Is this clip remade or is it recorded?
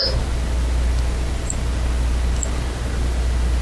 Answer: recorded